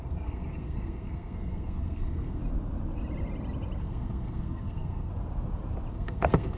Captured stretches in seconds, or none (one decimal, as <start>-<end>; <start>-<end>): 2.4-3.8; 5.1-5.9